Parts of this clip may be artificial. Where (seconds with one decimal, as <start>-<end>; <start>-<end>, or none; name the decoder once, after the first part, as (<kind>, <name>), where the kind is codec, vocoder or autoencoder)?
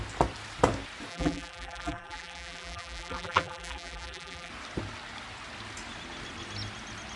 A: 1.1-4.5 (vocoder, BigVGAN v2)